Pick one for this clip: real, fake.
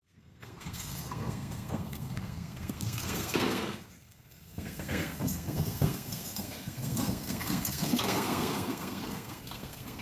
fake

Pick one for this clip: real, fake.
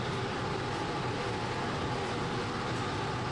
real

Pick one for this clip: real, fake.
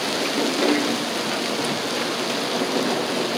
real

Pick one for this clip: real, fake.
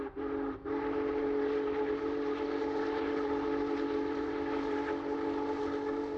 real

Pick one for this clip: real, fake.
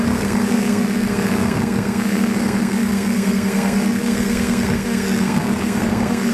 fake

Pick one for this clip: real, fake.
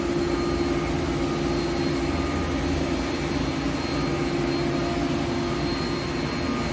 real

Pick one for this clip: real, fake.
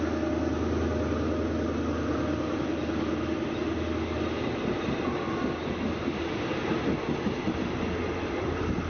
real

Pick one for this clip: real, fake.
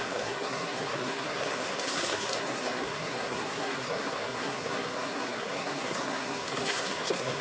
fake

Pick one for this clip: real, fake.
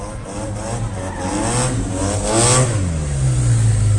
real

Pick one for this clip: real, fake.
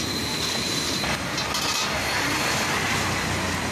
real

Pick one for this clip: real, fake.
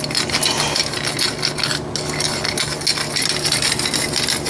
real